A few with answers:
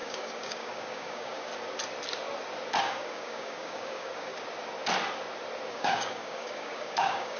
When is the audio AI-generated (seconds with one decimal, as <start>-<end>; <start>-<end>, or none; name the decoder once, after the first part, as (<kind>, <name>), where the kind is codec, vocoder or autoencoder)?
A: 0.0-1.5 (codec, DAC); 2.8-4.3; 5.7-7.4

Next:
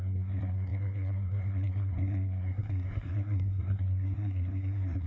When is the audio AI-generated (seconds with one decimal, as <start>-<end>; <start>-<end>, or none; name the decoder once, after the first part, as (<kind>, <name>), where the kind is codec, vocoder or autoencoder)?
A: 0.0-5.1 (codec, SNAC)

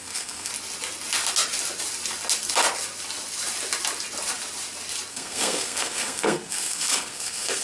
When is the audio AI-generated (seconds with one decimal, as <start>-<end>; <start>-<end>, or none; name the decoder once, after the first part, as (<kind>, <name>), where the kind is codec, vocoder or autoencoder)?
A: 0.0-0.5 (codec, SNAC); 5.1-7.6

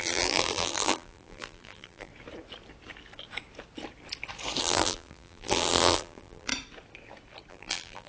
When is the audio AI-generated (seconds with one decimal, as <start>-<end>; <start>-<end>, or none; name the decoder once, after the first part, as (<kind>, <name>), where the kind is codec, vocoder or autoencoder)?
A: 0.0-2.1 (vocoder, BigVGAN v2); 4.6-6.5; 7.5-8.1

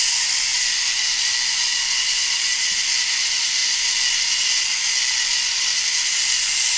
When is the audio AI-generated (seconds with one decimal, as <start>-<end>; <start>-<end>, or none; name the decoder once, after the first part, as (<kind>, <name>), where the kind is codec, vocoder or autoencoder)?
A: none

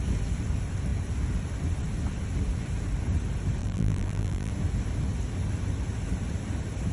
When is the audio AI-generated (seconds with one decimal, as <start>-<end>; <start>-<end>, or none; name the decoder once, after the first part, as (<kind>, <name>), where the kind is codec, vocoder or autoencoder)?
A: 3.6-4.5 (vocoder, BigVGAN v2)